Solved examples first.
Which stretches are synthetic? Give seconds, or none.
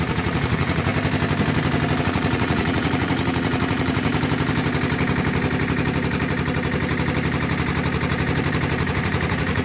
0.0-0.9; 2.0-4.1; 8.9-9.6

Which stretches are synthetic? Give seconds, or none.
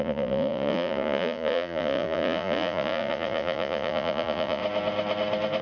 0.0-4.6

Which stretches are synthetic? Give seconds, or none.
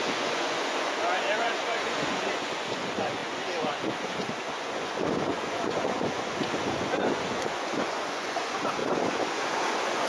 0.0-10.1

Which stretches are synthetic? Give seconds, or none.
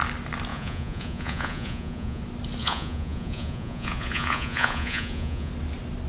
0.5-2.2; 2.6-5.5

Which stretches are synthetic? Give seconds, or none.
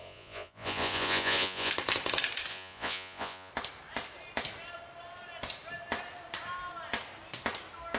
0.0-1.7; 2.5-3.5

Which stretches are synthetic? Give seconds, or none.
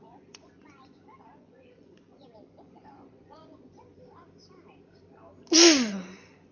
0.0-3.9; 5.9-6.5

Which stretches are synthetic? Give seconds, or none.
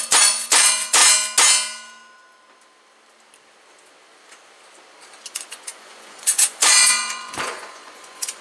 0.0-1.0; 5.3-8.4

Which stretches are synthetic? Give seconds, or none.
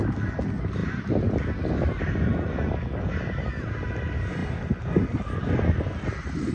none